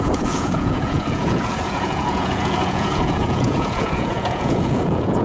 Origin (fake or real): fake